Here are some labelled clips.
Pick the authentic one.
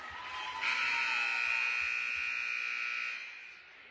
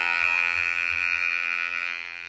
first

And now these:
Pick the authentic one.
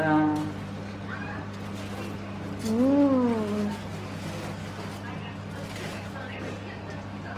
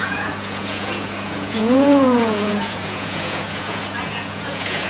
first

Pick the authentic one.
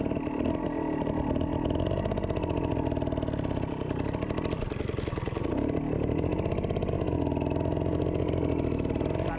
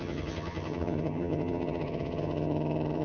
first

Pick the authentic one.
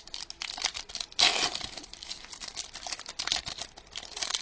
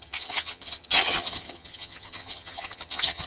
first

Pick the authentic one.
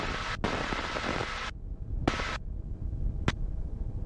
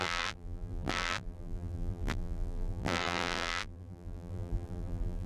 first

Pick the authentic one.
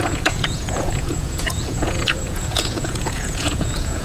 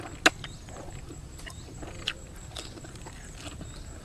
second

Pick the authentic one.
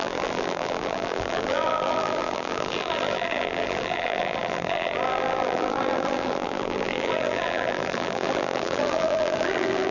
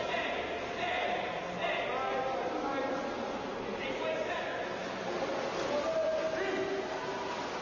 second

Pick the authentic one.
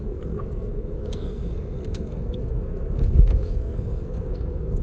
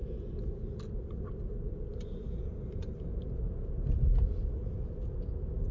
second